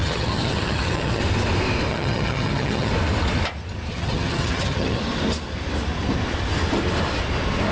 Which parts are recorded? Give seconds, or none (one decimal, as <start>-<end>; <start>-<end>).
1.2-1.9; 2.9-3.9; 5.0-7.7